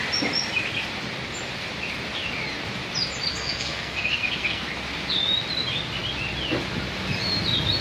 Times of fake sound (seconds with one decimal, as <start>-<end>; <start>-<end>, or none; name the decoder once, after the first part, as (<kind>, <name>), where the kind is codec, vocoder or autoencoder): 3.3-4.7 (codec, SNAC)